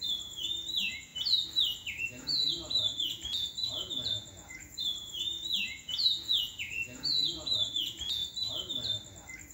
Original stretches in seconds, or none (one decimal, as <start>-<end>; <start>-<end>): 1.1-2.0; 8.2-9.5